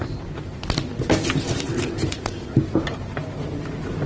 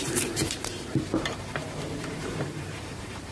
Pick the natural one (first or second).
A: first